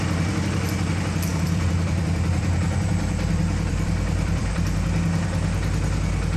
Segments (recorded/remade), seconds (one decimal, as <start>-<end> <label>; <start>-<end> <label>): 0.0-1.3 recorded; 1.3-4.6 remade; 4.6-6.4 recorded